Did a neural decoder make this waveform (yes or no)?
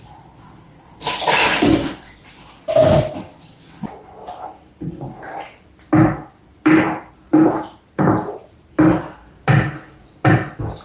no